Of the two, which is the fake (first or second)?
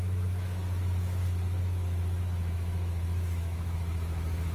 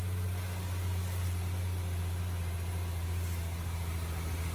first